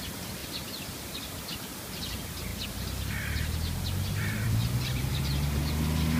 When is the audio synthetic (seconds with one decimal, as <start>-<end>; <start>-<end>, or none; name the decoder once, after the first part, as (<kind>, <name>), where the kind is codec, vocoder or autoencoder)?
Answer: 0.4-1.4 (vocoder, BigVGAN v2); 4.2-5.2